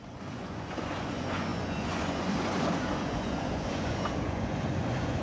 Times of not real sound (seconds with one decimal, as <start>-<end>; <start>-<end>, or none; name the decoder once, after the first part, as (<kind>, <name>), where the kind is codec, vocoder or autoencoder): 0.0-5.2 (vocoder, Vocos)